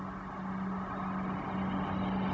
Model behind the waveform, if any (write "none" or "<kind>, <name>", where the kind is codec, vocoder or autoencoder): none